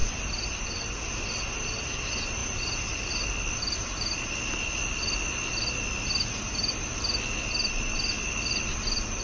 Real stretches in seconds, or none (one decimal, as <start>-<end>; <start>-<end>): 0.0-9.2

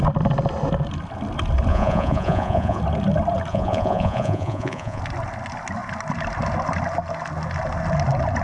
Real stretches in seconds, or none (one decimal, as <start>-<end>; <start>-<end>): 0.0-1.7; 2.8-3.5; 5.0-8.4